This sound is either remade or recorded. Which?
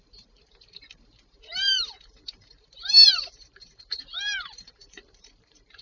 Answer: remade